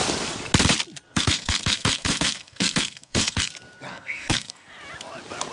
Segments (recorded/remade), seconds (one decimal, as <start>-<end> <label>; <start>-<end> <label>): 0.0-1.1 recorded; 1.1-3.5 remade; 3.5-3.9 recorded; 3.9-4.7 remade; 4.7-5.5 recorded